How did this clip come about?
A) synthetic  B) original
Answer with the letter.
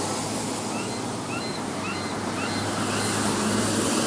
B